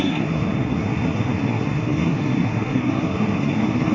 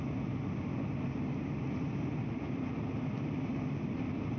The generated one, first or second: first